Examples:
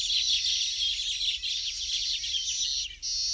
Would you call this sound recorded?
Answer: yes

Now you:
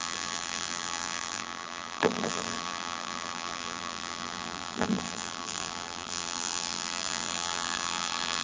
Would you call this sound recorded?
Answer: no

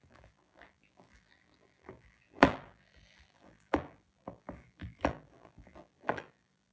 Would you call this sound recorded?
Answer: no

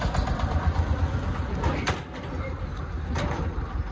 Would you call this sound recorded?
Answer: yes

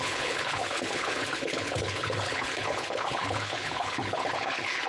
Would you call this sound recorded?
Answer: no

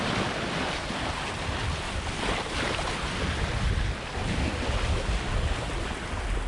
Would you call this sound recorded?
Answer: yes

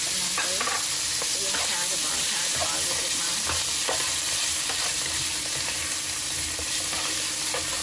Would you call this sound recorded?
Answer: yes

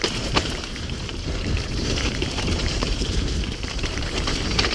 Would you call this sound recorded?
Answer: no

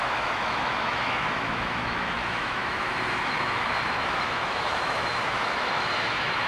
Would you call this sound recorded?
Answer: no